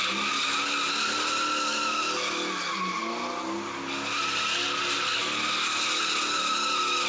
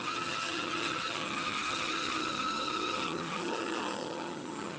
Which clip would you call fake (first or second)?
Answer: second